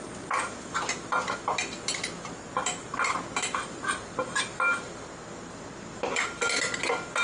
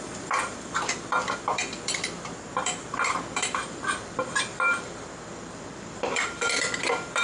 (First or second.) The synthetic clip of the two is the second